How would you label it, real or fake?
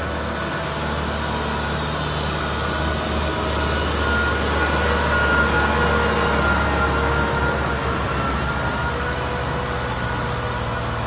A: real